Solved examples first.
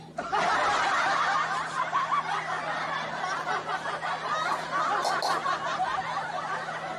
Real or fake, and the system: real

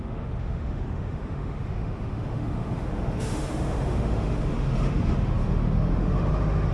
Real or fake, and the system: fake, autoencoder, DAC-VAE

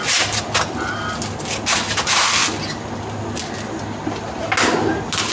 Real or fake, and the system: real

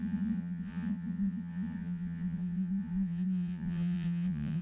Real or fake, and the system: fake, vocoder, Vocos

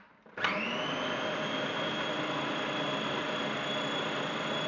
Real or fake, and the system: real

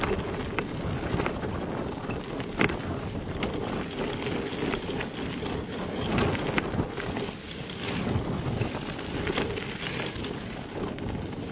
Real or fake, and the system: real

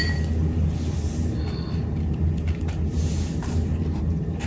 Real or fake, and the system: real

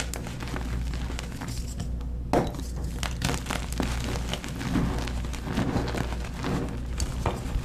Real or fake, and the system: real